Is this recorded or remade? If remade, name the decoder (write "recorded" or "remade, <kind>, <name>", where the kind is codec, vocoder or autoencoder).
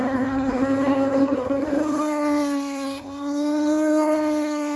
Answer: remade, codec, SNAC